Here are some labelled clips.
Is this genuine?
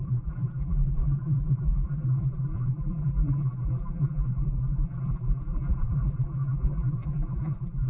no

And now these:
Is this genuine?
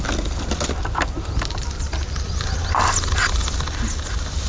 yes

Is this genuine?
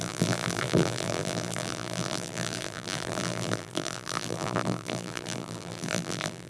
no